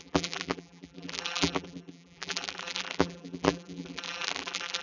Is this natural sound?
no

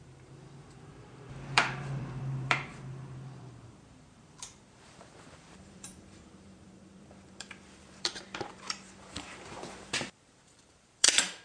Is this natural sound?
no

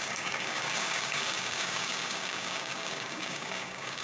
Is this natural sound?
no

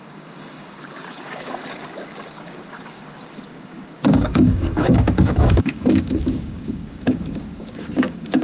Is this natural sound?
no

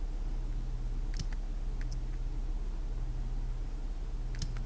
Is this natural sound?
yes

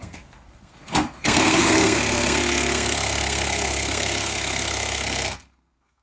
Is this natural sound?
no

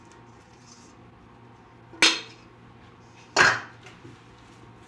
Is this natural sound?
yes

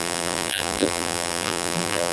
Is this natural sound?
no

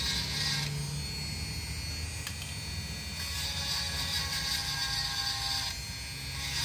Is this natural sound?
yes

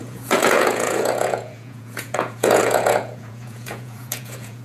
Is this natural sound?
no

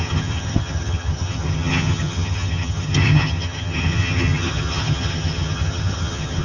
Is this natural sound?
no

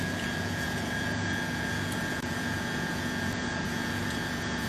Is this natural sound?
no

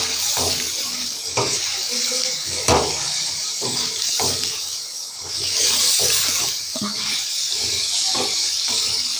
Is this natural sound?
no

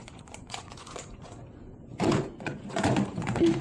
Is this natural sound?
no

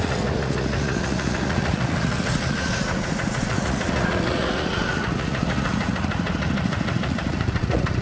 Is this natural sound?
no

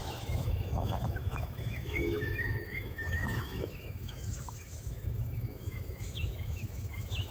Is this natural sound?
no